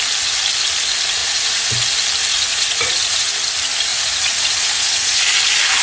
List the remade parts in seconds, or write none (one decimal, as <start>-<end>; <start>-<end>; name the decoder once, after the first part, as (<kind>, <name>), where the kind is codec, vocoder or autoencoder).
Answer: 1.2-1.7 (vocoder, Vocos); 2.2-3.3; 3.9-5.2